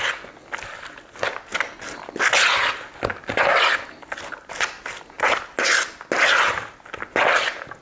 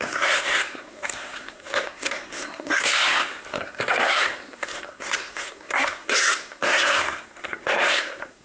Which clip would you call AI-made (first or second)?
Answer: second